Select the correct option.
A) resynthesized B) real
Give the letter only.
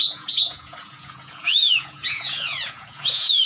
A